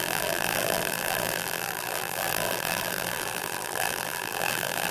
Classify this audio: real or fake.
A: fake